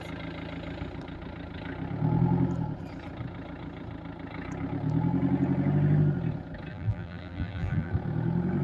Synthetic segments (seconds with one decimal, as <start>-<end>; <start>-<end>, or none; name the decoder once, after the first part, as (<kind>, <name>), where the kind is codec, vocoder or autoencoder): 6.7-7.9 (vocoder, BigVGAN v2)